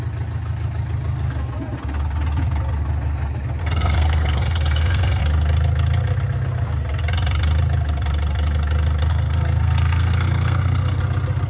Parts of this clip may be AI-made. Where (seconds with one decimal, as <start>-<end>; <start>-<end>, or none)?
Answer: 3.6-5.2; 9.1-11.0